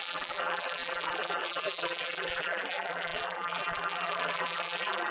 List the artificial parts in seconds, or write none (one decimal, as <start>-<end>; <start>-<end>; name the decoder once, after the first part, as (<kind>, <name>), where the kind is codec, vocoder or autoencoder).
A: 0.0-5.1 (vocoder, BigVGAN v2)